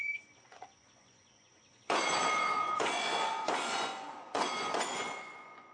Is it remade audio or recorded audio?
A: remade